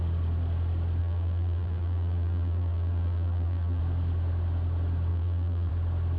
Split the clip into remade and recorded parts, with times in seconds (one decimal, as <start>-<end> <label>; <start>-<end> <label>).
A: 0.0-1.0 recorded; 1.0-3.8 remade; 3.8-5.1 recorded; 5.1-5.7 remade; 5.7-6.2 recorded